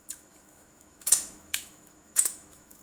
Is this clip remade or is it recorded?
remade